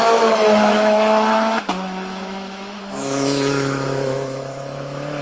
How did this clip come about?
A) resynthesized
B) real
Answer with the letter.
A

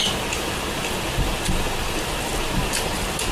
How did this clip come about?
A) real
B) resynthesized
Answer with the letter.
A